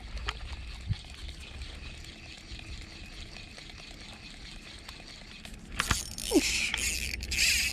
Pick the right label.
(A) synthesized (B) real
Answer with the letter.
B